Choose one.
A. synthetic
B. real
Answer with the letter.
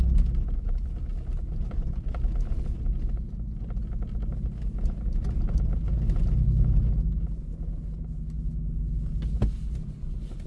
B